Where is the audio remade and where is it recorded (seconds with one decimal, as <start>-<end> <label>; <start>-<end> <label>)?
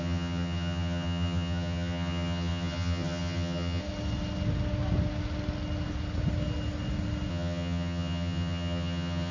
0.0-3.8 remade; 3.8-7.3 recorded; 7.3-9.3 remade